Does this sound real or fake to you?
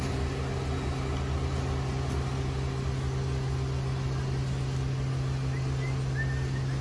real